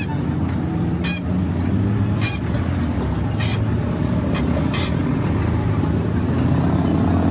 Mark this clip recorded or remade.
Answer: recorded